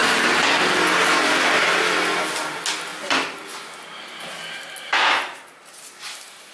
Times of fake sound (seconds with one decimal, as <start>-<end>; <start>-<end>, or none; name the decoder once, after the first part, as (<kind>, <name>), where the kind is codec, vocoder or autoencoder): 0.0-0.6 (vocoder, BigVGAN v2); 1.0-1.6